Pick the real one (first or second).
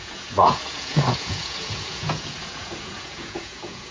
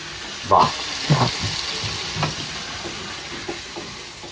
second